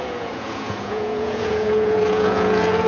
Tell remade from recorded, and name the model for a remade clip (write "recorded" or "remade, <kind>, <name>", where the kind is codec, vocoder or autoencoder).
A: remade, vocoder, Vocos